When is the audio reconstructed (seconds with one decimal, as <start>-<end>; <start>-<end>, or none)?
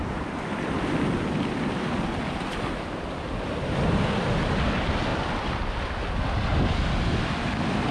none